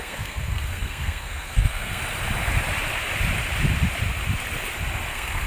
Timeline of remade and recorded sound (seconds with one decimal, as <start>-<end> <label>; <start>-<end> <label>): 0.0-2.0 remade; 2.0-5.1 recorded; 5.1-5.5 remade